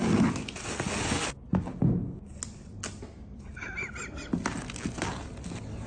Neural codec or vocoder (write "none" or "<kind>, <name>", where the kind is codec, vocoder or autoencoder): none